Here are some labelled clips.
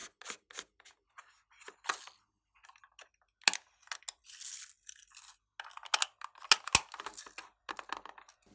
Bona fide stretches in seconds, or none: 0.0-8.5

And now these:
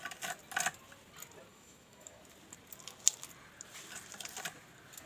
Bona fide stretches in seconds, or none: 0.0-1.5; 2.2-5.1

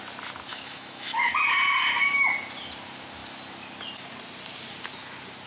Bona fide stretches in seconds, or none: 0.0-0.5; 1.3-5.5

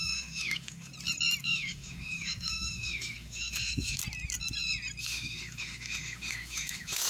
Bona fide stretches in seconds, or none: 0.9-1.4; 4.0-5.0

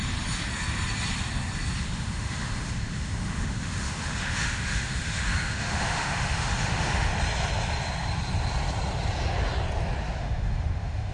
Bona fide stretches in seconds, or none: 0.0-1.8; 7.1-10.2

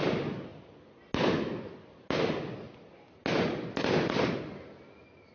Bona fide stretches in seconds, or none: 0.0-5.3